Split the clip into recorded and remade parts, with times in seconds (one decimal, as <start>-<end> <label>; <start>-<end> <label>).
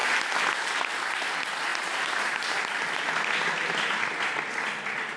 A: 0.0-5.2 recorded